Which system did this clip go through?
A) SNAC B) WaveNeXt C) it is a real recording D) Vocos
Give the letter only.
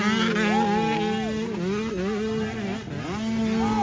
C